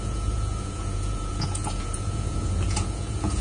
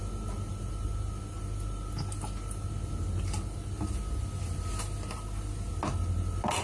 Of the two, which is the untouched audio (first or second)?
second